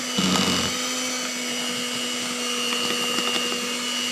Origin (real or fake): real